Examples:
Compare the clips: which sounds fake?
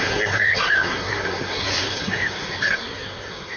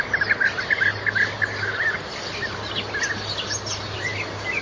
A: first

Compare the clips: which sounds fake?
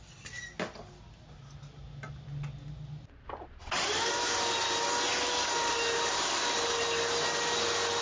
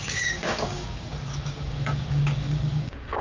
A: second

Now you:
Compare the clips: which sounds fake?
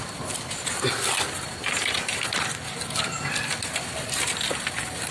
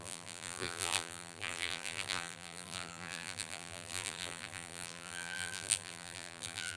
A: second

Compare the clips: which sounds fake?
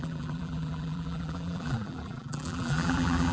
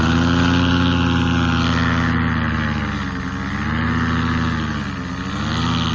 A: first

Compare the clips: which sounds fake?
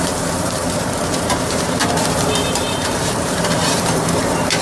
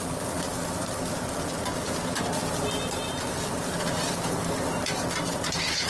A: first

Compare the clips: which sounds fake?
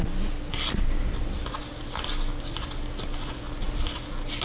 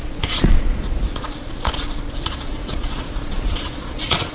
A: second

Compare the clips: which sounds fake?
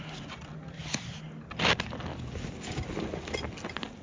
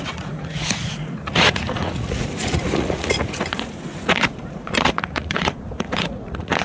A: second